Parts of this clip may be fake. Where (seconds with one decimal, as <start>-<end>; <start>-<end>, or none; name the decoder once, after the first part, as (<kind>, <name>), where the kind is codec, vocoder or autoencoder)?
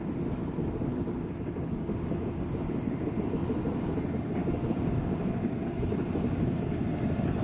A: 0.6-2.4 (codec, DAC); 4.4-6.8